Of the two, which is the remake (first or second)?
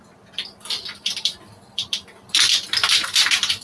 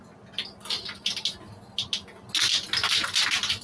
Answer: first